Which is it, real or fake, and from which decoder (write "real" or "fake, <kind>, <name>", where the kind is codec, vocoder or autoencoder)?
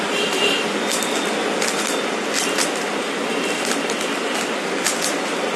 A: real